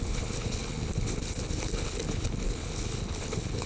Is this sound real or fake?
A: fake